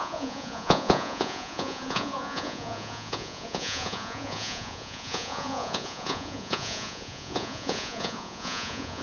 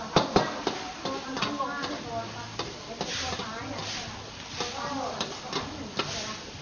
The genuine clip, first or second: second